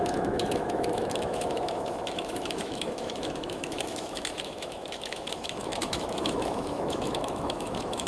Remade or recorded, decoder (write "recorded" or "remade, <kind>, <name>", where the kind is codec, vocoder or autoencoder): remade, autoencoder, DAC-VAE